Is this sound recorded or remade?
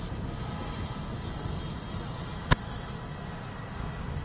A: recorded